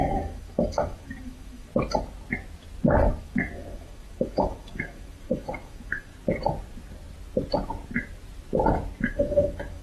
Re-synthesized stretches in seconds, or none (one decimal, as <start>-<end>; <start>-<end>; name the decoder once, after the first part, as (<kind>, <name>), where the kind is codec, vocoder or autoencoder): 0.0-1.7 (autoencoder, DAC-VAE); 3.2-6.1; 9.0-9.8